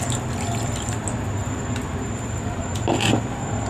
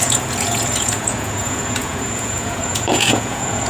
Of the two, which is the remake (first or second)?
second